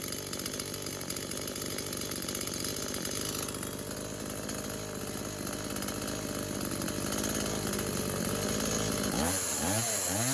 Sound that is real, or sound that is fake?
real